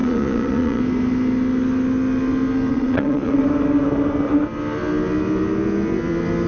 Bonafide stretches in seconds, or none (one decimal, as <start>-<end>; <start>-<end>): 0.8-2.7; 3.4-6.5